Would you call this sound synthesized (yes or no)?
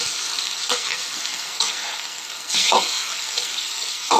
yes